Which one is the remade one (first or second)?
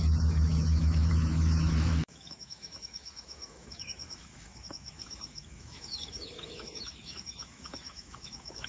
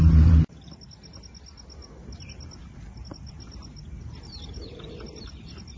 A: first